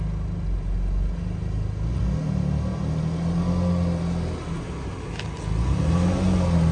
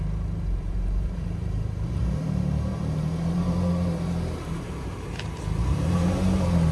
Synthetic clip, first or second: second